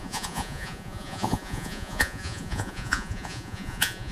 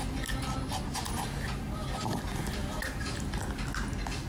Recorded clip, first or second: second